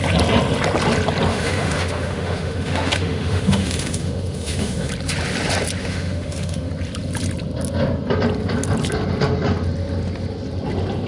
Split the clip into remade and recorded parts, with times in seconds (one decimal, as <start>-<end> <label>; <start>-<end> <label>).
0.0-1.3 recorded; 1.3-4.9 remade; 4.9-5.8 recorded; 5.8-6.7 remade; 6.7-11.1 recorded